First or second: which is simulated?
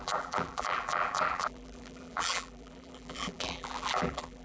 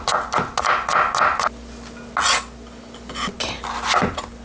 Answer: first